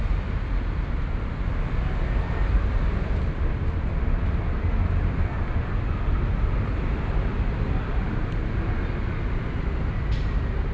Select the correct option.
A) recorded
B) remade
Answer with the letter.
A